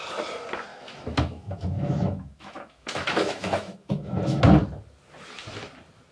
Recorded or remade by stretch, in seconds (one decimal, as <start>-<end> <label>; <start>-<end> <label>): 0.0-0.7 recorded; 0.7-4.4 remade; 4.4-6.1 recorded